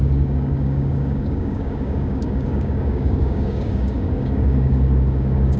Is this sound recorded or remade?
remade